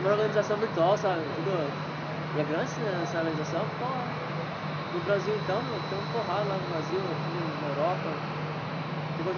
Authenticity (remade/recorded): recorded